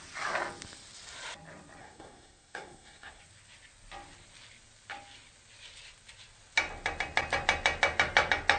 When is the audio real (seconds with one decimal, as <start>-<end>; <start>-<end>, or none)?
0.0-1.8; 3.2-8.6